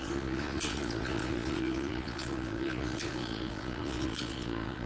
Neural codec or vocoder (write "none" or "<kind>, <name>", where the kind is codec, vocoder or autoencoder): vocoder, Vocos